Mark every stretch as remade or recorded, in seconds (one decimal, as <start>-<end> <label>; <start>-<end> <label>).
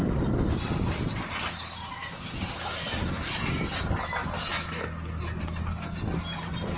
0.0-6.8 recorded